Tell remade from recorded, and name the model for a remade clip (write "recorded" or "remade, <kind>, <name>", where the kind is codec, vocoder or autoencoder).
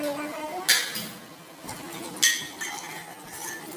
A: recorded